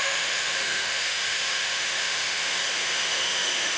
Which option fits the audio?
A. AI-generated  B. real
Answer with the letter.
A